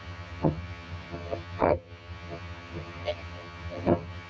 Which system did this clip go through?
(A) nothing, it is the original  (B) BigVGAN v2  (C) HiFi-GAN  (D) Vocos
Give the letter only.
C